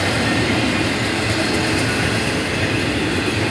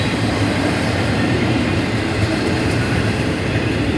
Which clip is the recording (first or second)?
first